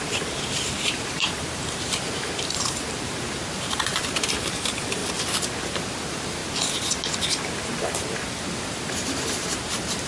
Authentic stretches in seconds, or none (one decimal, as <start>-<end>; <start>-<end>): 5.0-5.9; 6.4-8.2